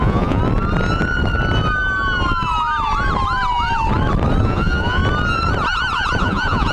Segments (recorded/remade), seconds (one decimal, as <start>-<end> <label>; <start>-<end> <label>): 0.0-0.4 remade; 0.4-4.4 recorded; 4.4-5.0 remade; 5.0-6.2 recorded; 6.2-6.7 remade